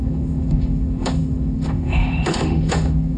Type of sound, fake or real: fake